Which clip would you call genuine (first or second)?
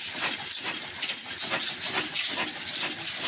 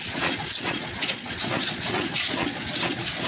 first